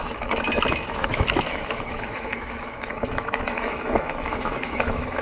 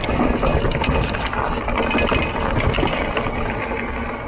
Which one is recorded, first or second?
second